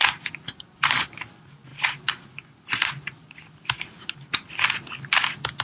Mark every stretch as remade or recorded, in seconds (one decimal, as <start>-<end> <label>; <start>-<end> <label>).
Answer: 0.0-5.6 recorded